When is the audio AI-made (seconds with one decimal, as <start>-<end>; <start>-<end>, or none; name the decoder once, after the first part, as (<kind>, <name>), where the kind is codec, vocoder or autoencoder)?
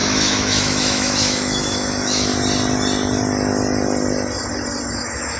0.0-2.3 (autoencoder, DAC-VAE); 4.9-5.4